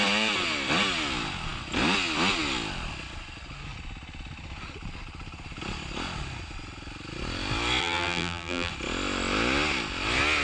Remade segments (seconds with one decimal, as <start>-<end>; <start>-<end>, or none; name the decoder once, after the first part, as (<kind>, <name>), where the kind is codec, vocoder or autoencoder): 7.8-8.7 (vocoder, BigVGAN v2)